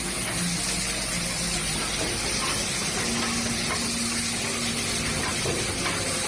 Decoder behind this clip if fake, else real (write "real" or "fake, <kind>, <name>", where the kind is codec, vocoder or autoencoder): real